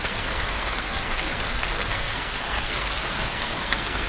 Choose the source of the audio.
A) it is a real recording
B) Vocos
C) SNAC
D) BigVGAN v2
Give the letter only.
C